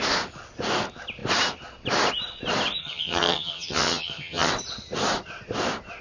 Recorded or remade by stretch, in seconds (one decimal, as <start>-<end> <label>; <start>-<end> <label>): 0.0-2.8 recorded; 2.8-4.5 remade; 4.5-6.0 recorded